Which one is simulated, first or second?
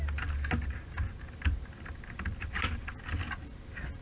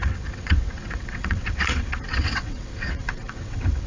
second